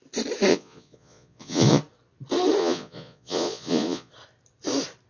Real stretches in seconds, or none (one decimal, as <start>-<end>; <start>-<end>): 0.0-0.5; 1.8-2.6; 4.1-5.1